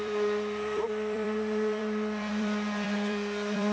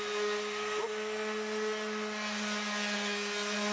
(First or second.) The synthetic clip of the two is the first